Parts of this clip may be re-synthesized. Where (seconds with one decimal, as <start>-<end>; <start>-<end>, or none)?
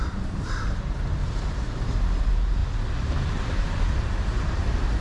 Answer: 0.0-1.2; 2.2-5.0